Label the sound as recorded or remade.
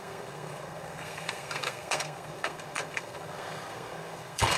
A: remade